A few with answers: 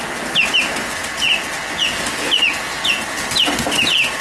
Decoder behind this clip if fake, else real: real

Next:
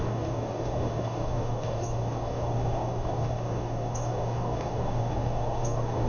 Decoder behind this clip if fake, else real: fake, codec, DAC